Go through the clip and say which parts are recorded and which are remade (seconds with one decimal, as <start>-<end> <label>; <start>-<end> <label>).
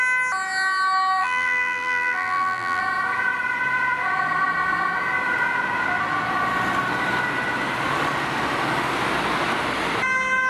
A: 0.0-1.2 recorded; 1.2-2.8 remade; 2.8-10.5 recorded